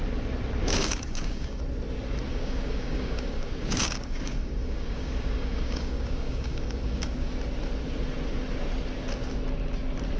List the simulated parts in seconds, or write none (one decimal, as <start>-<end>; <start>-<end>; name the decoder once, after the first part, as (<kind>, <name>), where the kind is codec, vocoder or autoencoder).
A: 0.6-1.6 (codec, DAC); 2.3-7.3

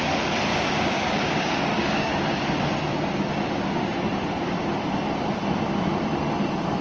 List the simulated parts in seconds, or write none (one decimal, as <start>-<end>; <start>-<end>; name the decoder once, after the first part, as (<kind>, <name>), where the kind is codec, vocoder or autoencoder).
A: 0.5-2.1 (codec, DAC)